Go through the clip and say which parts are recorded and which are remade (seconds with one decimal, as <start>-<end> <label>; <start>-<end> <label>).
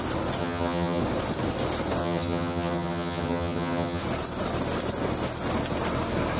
0.0-0.4 recorded; 0.4-1.0 remade; 1.0-2.0 recorded; 2.0-4.0 remade; 4.0-6.4 recorded